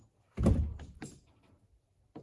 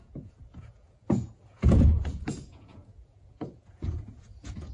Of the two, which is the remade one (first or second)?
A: second